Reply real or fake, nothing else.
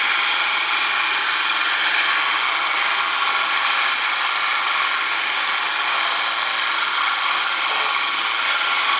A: real